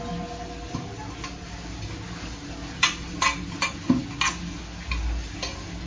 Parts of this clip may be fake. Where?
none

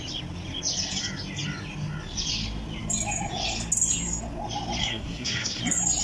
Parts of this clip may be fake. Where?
4.8-5.6 (codec, SNAC)

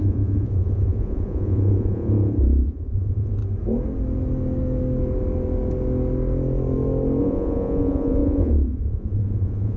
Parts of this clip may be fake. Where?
0.0-3.4 (vocoder, Vocos); 7.2-9.8

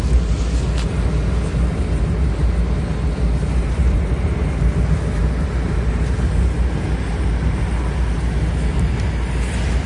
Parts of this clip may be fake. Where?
3.6-4.4 (vocoder, BigVGAN v2)